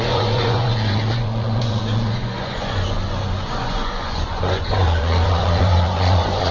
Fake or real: fake